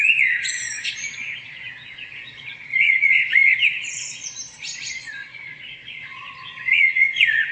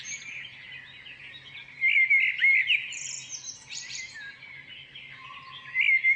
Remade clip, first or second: first